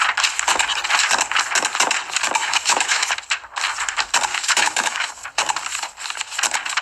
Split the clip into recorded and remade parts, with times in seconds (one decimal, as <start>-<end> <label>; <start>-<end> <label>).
0.0-2.4 recorded; 2.4-3.1 remade; 3.1-4.3 recorded; 4.3-5.1 remade; 5.1-6.8 recorded